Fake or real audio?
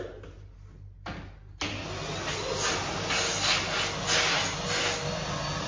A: real